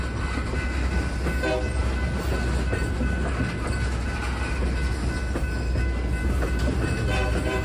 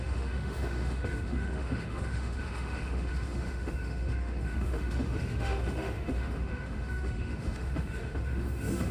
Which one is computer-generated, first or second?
second